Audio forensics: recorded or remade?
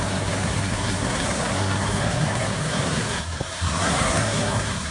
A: remade